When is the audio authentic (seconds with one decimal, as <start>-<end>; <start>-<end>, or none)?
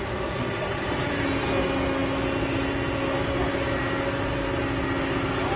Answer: 0.0-5.6